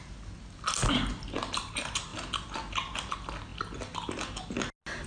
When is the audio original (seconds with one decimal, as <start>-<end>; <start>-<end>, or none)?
0.0-5.1